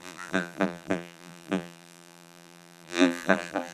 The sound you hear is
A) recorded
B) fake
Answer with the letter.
B